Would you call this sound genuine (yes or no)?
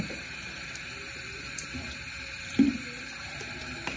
no